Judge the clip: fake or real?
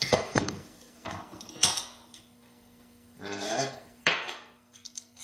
fake